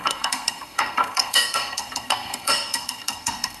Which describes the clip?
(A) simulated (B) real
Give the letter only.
A